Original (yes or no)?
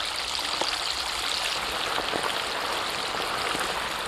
yes